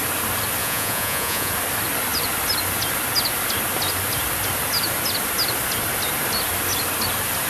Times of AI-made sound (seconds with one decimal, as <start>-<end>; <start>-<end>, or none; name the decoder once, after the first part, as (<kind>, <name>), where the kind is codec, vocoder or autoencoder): 0.6-1.5 (vocoder, Vocos)